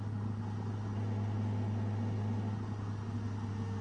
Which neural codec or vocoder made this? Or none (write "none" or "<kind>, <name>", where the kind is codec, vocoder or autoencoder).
none